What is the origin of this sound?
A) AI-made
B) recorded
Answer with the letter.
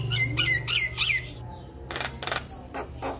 B